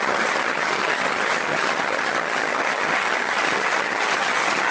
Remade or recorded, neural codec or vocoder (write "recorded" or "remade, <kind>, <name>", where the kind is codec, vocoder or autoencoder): remade, vocoder, HiFi-GAN